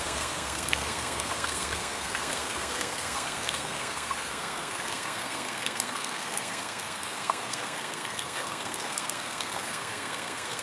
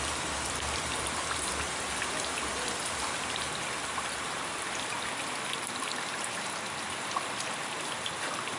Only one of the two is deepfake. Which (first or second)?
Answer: first